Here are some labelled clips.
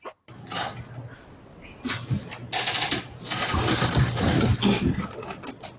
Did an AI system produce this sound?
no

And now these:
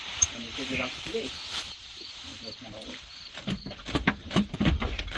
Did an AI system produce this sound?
yes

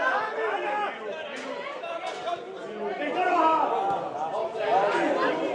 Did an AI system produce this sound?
no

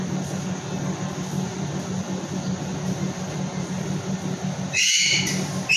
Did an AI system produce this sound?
no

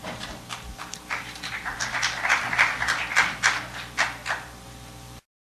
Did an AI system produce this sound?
yes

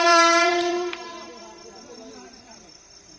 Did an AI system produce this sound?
yes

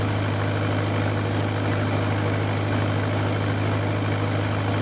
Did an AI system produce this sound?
no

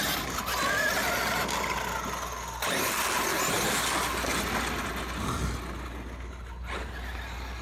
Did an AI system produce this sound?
no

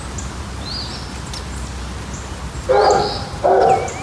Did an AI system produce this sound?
no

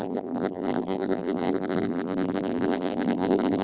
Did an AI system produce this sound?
yes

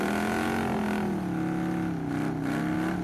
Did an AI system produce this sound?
no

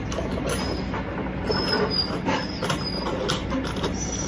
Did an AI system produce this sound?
no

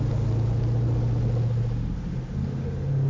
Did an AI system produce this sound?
no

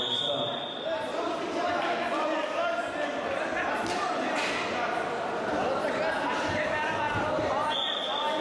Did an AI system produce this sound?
no